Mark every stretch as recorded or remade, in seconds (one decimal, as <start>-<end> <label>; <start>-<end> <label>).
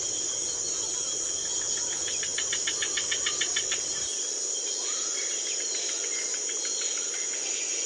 0.0-7.9 recorded